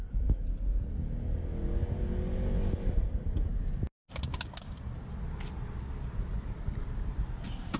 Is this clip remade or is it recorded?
recorded